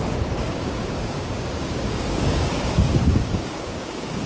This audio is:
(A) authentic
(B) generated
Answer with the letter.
B